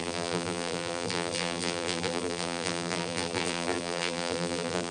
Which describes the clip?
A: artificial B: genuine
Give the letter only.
A